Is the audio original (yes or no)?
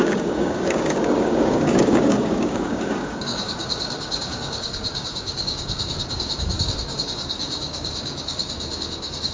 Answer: no